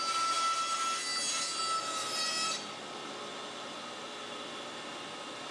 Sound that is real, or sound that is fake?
real